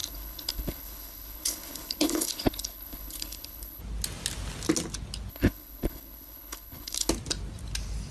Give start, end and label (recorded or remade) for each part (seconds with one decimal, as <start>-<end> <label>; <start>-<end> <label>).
0.0-3.8 remade; 3.8-5.3 recorded; 5.3-7.1 remade; 7.1-8.1 recorded